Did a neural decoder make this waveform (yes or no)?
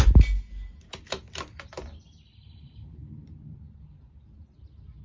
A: no